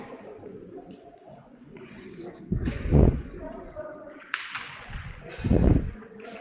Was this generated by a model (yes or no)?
yes